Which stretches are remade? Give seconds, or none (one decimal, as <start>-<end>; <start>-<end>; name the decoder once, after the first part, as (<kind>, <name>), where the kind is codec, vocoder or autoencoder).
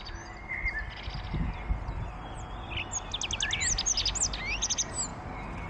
none